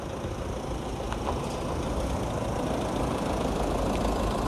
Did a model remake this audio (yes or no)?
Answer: no